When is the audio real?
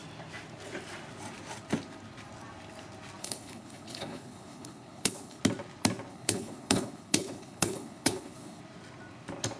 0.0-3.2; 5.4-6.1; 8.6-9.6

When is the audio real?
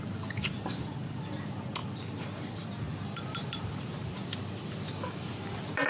0.0-5.9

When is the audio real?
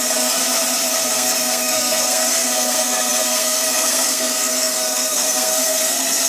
0.4-1.1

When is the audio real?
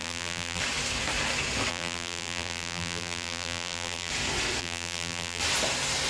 0.6-1.7; 4.1-4.6; 5.4-6.1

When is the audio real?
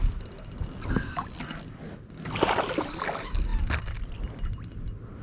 0.0-5.2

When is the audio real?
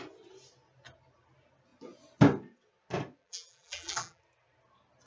0.0-3.2; 4.2-5.1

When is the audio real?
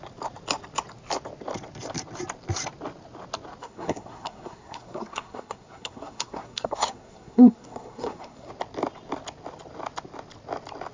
0.0-3.6; 8.5-10.9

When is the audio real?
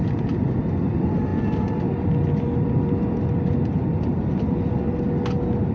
0.0-1.3; 4.7-5.7